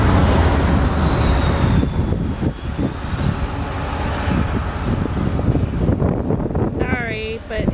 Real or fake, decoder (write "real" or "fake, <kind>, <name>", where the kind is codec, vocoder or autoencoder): real